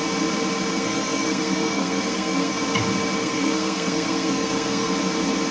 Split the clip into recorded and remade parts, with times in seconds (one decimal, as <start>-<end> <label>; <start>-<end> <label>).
0.0-0.7 recorded; 0.7-2.6 remade; 2.6-3.2 recorded; 3.2-4.9 remade; 4.9-5.5 recorded